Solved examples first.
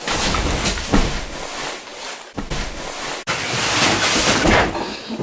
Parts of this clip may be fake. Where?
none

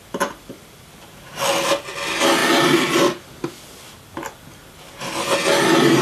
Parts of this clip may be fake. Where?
none

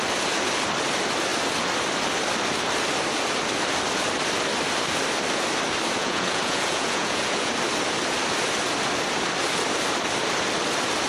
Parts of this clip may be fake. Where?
6.0-7.5 (vocoder, Vocos)

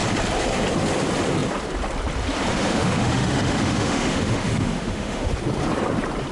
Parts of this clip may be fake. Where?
2.5-5.3 (autoencoder, DAC-VAE)

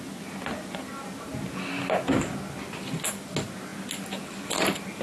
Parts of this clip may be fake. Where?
none

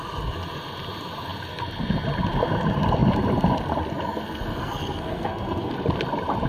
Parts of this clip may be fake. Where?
4.6-5.7 (codec, SNAC)

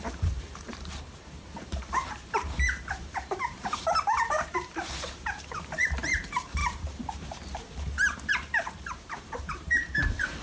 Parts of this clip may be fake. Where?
0.0-10.4 (vocoder, BigVGAN v2)

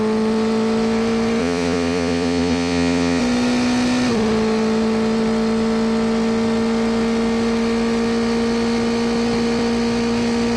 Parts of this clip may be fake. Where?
1.4-3.2 (vocoder, Vocos)